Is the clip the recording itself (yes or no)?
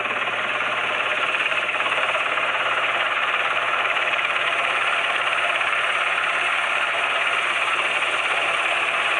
no